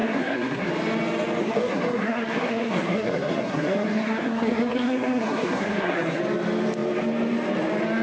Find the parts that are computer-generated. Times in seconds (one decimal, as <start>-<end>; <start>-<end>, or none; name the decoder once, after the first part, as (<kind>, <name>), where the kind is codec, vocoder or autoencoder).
0.0-0.7 (codec, SNAC); 1.4-6.2